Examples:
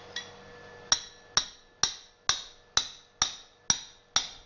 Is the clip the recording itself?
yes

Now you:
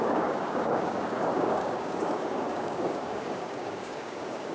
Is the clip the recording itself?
no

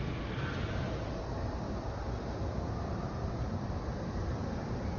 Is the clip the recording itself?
yes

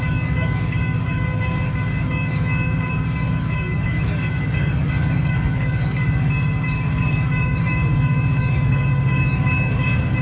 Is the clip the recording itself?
no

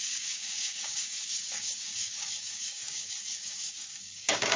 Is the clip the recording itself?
no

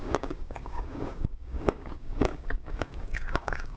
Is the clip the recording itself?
no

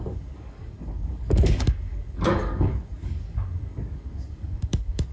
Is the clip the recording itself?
no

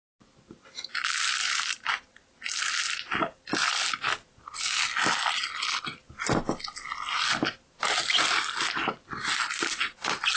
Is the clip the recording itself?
yes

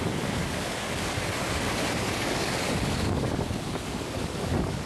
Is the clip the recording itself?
no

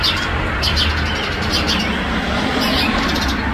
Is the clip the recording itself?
yes